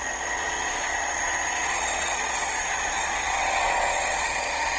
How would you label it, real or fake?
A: fake